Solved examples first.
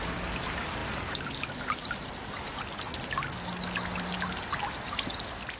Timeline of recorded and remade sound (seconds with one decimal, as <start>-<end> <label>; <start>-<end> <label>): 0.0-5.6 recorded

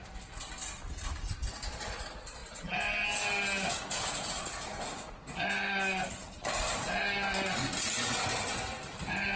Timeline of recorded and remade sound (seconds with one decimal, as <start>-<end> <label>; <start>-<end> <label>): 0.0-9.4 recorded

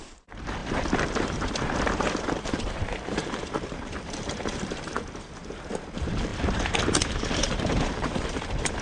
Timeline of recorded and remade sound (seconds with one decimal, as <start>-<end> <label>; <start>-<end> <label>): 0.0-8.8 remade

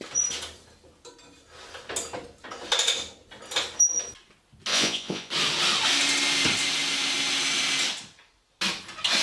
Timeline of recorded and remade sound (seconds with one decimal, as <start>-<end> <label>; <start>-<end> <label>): 0.0-4.7 recorded; 4.7-5.3 remade; 5.3-9.2 recorded

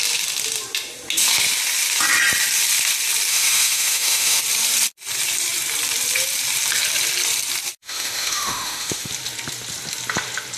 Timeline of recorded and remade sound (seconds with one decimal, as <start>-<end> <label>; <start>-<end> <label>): 0.0-3.3 recorded; 3.3-4.4 remade; 4.4-7.8 recorded; 7.8-9.1 remade; 9.1-10.6 recorded

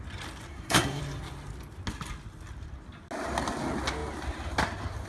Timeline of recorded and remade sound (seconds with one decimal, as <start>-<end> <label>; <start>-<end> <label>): 0.0-0.5 recorded; 0.5-1.0 remade; 1.0-5.1 recorded

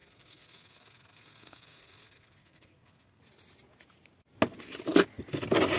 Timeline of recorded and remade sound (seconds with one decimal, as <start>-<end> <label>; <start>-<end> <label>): 0.0-3.2 remade; 3.2-5.8 recorded